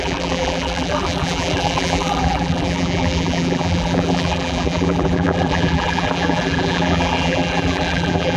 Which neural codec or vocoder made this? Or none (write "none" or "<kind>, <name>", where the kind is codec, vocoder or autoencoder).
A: vocoder, BigVGAN v2